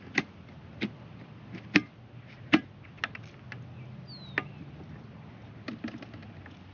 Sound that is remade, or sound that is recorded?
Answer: recorded